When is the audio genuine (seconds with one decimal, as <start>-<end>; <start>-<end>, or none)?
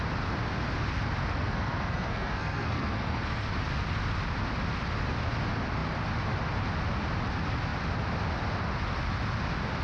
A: 0.0-1.2; 3.5-9.8